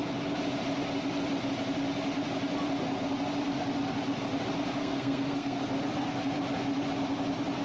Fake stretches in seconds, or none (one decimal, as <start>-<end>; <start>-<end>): 4.8-5.6